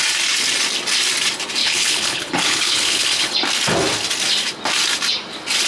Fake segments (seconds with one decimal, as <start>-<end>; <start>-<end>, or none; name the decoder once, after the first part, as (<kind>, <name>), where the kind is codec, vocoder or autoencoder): 1.6-3.3 (codec, HILCodec)